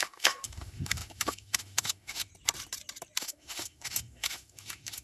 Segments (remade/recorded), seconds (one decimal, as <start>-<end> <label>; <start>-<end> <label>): 0.0-2.3 remade; 2.3-3.2 recorded; 3.2-5.0 remade